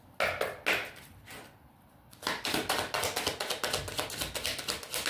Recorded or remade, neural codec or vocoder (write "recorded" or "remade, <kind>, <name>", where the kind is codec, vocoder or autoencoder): recorded